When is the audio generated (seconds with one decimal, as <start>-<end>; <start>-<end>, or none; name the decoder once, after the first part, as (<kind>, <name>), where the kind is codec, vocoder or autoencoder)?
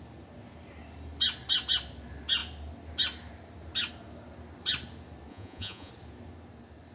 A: 5.3-5.9 (vocoder, Vocos)